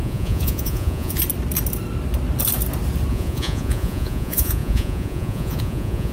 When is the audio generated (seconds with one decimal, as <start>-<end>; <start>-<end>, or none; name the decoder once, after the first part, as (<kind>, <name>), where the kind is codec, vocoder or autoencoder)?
0.0-1.2 (vocoder, Vocos); 3.1-6.1